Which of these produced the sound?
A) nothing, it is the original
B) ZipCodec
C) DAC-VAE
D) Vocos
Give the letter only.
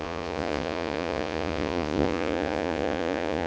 D